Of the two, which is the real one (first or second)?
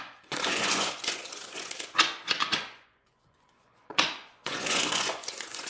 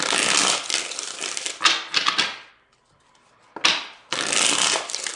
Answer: second